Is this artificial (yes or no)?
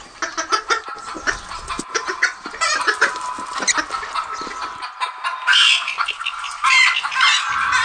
no